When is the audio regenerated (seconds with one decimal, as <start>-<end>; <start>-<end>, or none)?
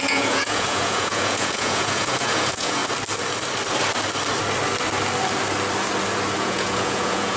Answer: 0.0-2.8; 6.4-7.4